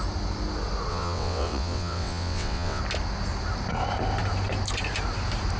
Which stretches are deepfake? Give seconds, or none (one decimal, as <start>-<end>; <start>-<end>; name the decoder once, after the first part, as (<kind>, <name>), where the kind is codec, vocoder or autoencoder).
0.9-2.8 (vocoder, WaveNeXt)